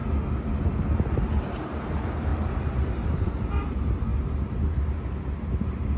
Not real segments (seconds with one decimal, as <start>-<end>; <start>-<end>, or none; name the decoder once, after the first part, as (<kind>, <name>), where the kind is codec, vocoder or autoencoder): 2.3-3.5 (vocoder, BigVGAN v2)